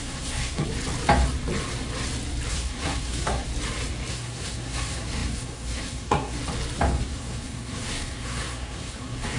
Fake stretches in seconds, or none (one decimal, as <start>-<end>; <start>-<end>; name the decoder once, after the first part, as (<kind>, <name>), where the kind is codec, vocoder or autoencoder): 0.0-0.7 (codec, SNAC); 2.5-3.5; 4.1-6.4; 7.0-9.4